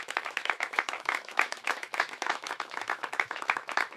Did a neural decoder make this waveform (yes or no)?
yes